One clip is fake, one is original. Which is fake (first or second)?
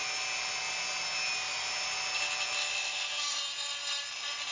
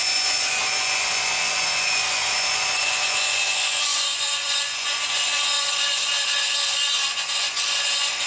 second